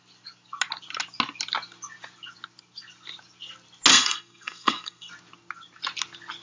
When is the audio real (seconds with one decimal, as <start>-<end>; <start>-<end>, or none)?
0.0-3.9; 5.1-6.4